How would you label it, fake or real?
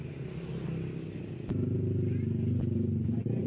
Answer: real